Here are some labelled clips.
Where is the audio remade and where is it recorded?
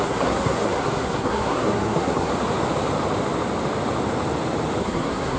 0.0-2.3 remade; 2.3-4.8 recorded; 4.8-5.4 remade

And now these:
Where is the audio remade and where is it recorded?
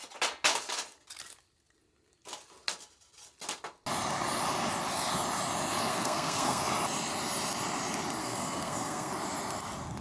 0.0-5.9 recorded; 5.9-6.6 remade; 6.6-8.2 recorded; 8.2-9.1 remade; 9.1-10.0 recorded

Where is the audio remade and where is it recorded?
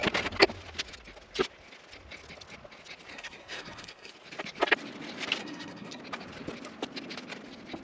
0.0-3.1 recorded; 3.1-4.1 remade; 4.1-5.4 recorded; 5.4-6.0 remade; 6.0-7.8 recorded